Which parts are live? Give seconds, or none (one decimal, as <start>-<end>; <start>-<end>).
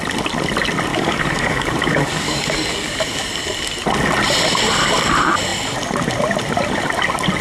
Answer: 0.0-0.9; 3.3-7.4